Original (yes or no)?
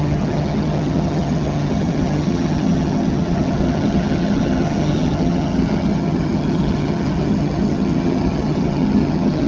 no